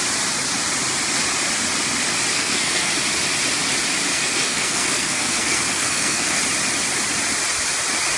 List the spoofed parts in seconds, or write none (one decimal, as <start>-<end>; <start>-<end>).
2.3-2.9; 4.1-6.4